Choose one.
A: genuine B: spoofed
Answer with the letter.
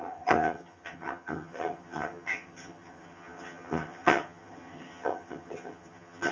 B